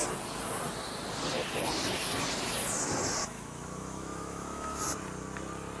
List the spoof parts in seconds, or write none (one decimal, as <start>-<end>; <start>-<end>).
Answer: 3.2-4.8